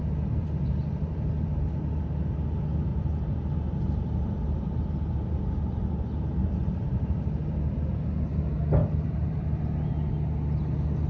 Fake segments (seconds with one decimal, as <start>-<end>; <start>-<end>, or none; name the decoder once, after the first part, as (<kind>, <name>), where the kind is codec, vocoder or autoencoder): 0.4-2.0 (vocoder, BigVGAN v2); 2.9-3.5; 6.6-7.9; 8.8-9.6